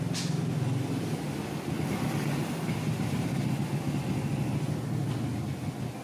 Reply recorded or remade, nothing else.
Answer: recorded